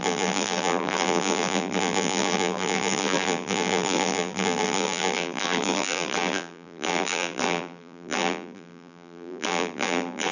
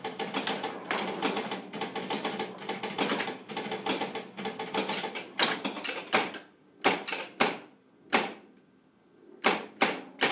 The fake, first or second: first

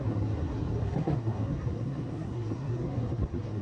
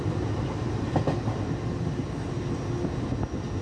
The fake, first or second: first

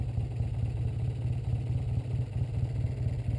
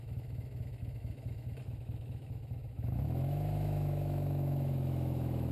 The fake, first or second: second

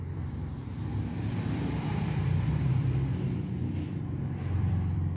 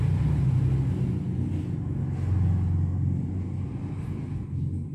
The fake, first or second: first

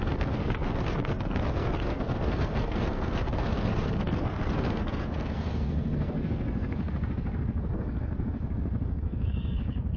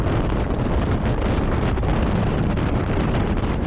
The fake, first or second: first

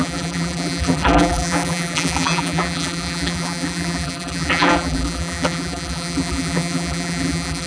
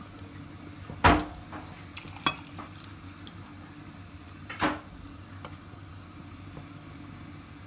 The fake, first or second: first